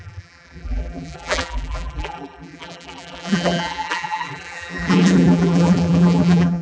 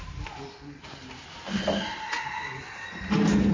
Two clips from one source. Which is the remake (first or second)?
first